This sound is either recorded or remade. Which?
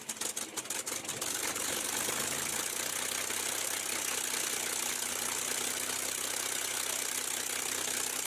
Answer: recorded